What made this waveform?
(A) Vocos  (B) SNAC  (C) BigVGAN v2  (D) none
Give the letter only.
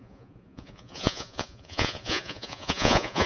A